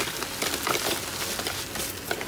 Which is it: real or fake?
real